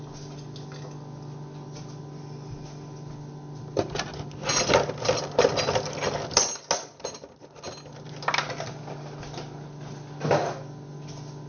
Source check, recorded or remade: recorded